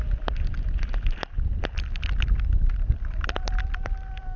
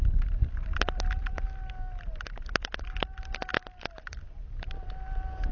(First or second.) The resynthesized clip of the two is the first